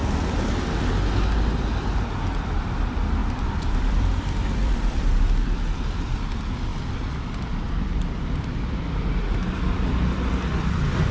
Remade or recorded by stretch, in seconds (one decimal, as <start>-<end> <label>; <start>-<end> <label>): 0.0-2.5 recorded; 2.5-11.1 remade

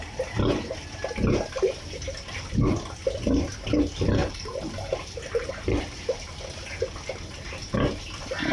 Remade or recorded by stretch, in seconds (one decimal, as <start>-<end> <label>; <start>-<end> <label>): 0.0-4.2 recorded; 4.2-5.8 remade; 5.8-8.5 recorded

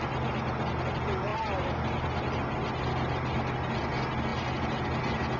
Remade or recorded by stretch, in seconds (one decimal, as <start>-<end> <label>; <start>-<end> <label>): 0.0-5.4 recorded

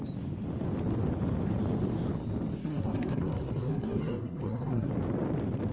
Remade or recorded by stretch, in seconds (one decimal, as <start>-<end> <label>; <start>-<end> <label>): 0.0-2.6 recorded; 2.6-4.9 remade; 4.9-5.7 recorded